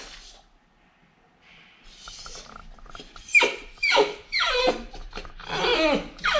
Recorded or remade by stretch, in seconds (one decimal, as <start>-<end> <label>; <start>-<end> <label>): 0.0-6.4 recorded